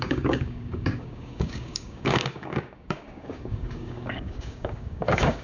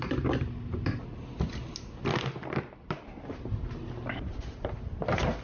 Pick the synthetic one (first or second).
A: first